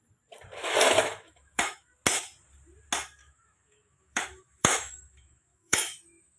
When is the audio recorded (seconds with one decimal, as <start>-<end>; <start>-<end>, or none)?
0.0-0.6; 1.9-3.2